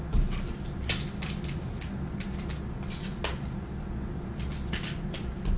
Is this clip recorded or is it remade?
recorded